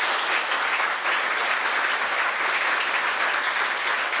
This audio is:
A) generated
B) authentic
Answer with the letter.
B